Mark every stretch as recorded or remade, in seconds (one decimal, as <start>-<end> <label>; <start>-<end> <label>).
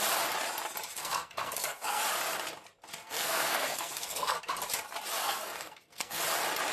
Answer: 0.0-1.0 recorded; 1.0-2.0 remade; 2.0-3.0 recorded; 3.0-4.4 remade; 4.4-5.2 recorded; 5.2-6.2 remade; 6.2-6.7 recorded